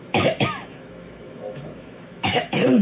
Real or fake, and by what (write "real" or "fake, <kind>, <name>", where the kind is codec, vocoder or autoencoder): fake, autoencoder, DAC-VAE